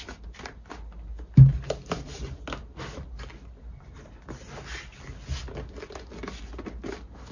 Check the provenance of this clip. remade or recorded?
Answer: recorded